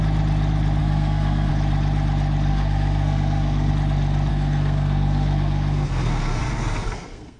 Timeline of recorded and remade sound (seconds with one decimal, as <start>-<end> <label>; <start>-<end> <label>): 0.0-0.8 recorded; 0.8-1.5 remade; 1.5-2.5 recorded; 2.5-3.7 remade; 3.7-4.3 recorded; 4.3-7.4 remade